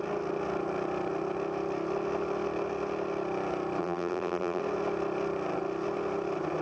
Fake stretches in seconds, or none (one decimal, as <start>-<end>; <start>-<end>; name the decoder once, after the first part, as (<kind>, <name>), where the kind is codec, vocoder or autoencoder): 3.8-4.6 (vocoder, BigVGAN v2)